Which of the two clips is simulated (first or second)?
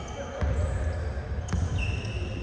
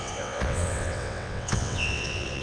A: second